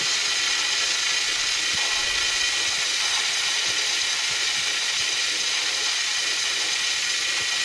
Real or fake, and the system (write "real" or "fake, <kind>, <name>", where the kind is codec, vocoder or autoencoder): real